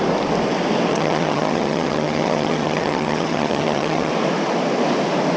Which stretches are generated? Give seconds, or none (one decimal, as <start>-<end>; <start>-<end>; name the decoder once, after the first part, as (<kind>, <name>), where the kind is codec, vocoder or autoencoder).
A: 0.9-4.1 (vocoder, HiFi-GAN)